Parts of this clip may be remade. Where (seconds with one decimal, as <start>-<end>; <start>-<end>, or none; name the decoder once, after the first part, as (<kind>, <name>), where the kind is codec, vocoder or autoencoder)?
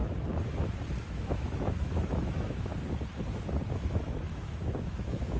1.0-2.7 (autoencoder, DAC-VAE); 3.7-5.4